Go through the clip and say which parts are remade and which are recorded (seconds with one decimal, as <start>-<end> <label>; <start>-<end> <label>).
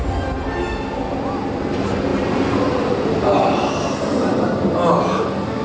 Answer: 0.0-5.6 recorded